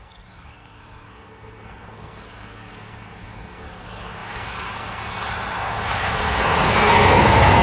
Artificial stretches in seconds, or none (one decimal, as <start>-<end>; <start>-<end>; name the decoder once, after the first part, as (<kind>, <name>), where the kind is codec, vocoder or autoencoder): 0.0-7.6 (codec, SNAC)